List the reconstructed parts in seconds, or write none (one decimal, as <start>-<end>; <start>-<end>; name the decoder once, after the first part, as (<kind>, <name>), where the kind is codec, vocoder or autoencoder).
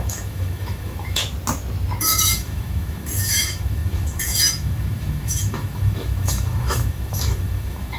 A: 0.0-1.2 (autoencoder, DAC-VAE); 2.0-8.0